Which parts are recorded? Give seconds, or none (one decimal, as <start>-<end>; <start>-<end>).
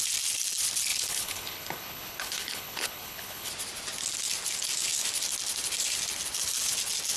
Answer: 0.0-0.9; 3.5-7.2